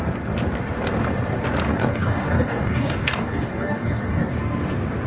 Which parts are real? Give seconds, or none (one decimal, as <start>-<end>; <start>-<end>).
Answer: 0.0-1.7; 4.3-5.1